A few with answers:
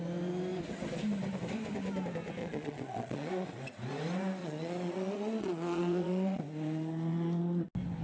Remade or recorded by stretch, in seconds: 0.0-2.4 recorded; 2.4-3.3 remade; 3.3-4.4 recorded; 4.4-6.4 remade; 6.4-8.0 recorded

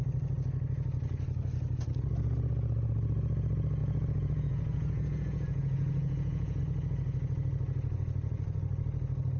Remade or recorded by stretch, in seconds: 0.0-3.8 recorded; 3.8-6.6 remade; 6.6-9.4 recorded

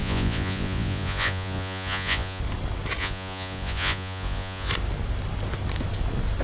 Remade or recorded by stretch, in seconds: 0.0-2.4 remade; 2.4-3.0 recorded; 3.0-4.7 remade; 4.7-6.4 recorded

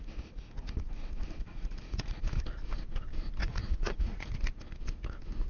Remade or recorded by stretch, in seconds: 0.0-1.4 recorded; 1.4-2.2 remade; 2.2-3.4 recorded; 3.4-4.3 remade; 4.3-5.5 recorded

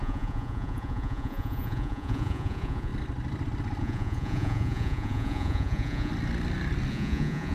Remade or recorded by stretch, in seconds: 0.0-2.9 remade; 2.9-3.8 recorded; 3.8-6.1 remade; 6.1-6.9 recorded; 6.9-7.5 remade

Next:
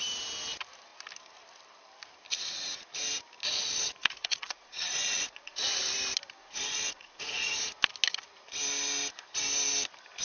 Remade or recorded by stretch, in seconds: 0.0-4.0 recorded; 4.0-5.8 remade; 5.8-6.4 recorded; 6.4-7.5 remade; 7.5-10.2 recorded